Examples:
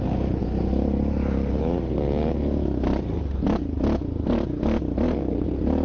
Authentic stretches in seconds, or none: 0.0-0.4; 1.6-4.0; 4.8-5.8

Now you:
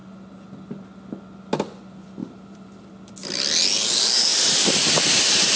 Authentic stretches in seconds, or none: 0.0-2.2; 2.9-4.3

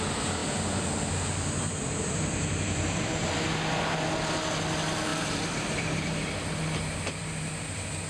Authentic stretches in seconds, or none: 0.0-0.4; 3.3-5.1; 6.3-7.2

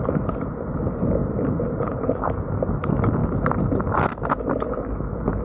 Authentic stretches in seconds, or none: 0.0-1.2; 2.4-5.4